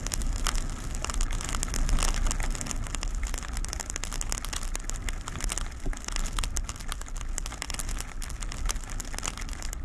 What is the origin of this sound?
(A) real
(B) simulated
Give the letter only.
A